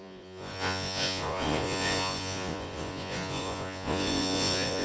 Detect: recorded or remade remade